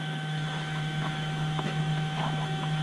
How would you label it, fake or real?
fake